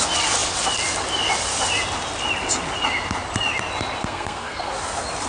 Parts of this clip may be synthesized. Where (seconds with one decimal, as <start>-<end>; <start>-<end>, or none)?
4.0-4.7